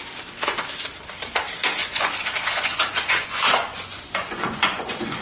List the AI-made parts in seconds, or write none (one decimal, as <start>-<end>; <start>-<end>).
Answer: 1.8-5.2